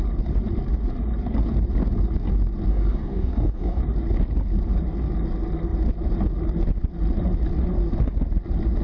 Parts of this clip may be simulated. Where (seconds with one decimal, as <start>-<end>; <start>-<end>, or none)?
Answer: 2.7-3.8